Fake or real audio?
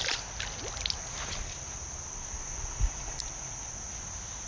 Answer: real